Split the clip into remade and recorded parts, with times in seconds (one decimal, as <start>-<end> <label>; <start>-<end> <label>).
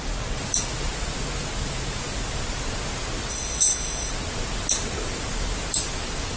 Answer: 0.0-3.3 recorded; 3.3-4.1 remade; 4.1-6.4 recorded